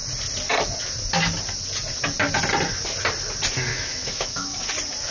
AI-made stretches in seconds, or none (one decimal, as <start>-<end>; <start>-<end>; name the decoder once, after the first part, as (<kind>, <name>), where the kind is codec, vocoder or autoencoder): 3.7-4.6 (autoencoder, DAC-VAE)